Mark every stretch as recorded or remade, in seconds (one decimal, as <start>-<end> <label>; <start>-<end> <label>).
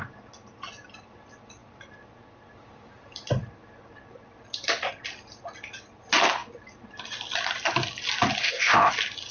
0.0-8.4 recorded; 8.4-8.9 remade; 8.9-9.3 recorded